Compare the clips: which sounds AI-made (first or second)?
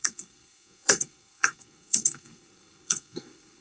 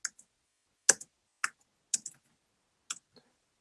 first